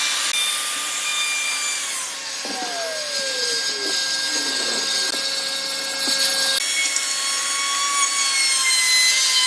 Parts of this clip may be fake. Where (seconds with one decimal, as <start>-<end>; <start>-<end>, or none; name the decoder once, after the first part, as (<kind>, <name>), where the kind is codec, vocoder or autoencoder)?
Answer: none